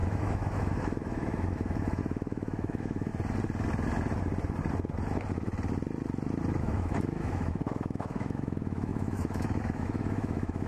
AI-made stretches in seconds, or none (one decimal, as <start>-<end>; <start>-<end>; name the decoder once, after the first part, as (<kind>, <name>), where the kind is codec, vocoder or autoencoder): 0.0-3.1 (autoencoder, DAC-VAE); 6.6-10.7